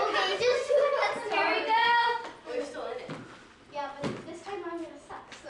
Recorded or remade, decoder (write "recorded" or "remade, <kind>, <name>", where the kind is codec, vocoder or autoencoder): recorded